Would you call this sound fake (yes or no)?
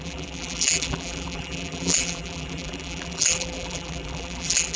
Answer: yes